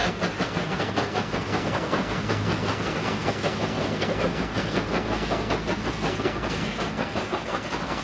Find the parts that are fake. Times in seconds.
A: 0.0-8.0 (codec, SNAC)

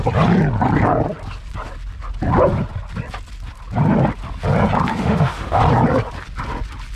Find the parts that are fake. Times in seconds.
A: 4.9-5.6 (autoencoder, DAC-VAE)

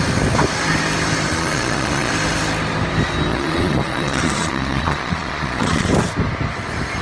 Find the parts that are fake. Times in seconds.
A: 1.3-2.1 (vocoder, Vocos); 3.3-5.9

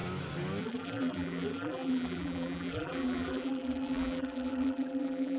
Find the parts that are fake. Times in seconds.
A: 0.6-5.4 (vocoder, BigVGAN v2)

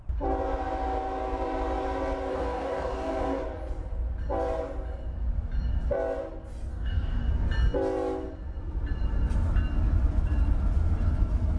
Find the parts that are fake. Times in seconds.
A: 2.3-3.4 (codec, DAC); 6.7-7.3